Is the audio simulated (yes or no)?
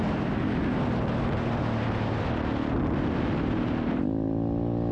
no